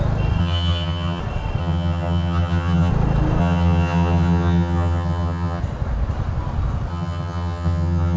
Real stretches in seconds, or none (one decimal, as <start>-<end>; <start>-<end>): 0.0-0.4; 1.2-1.6; 2.9-3.4; 5.6-6.9